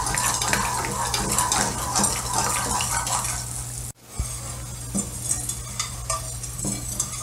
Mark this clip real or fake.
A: real